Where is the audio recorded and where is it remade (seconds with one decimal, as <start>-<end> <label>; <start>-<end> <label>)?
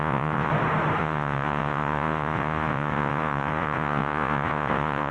0.0-0.5 remade; 0.5-1.0 recorded; 1.0-5.1 remade